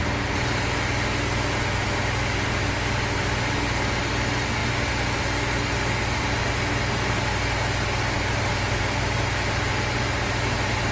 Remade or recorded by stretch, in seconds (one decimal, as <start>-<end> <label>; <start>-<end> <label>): 0.0-10.9 recorded